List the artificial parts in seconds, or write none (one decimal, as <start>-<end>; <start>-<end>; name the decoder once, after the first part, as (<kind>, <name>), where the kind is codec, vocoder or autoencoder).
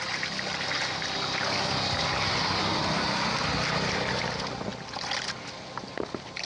none